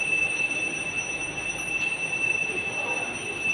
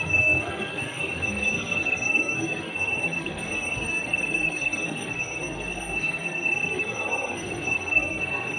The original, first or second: first